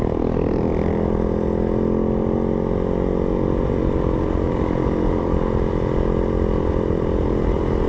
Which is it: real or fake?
real